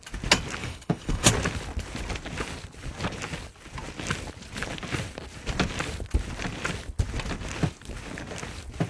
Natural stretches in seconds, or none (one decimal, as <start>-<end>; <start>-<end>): 0.0-0.6; 1.3-8.9